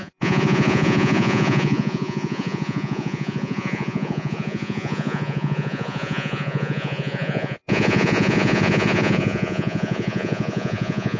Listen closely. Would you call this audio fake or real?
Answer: fake